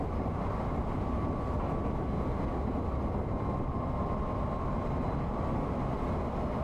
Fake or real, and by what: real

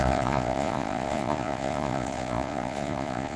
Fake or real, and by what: fake, vocoder, Vocos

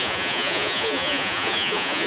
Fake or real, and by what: fake, vocoder, Vocos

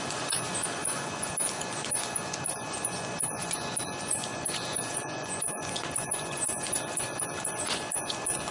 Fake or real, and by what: fake, vocoder, Vocos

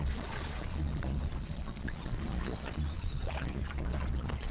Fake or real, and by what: fake, vocoder, Vocos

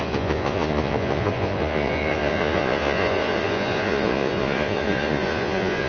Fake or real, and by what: fake, vocoder, Vocos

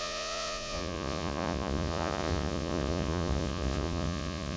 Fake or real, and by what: fake, vocoder, Vocos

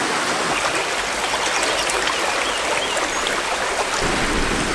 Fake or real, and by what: real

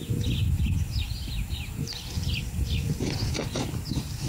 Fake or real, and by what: real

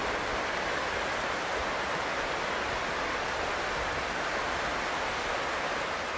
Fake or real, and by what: real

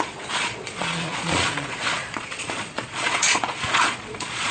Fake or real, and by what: fake, vocoder, Vocos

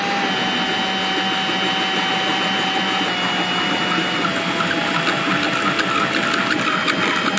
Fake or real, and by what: real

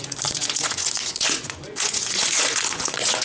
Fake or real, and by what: fake, vocoder, Vocos